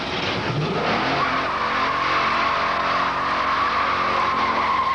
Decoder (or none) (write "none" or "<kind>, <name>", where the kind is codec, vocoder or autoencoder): none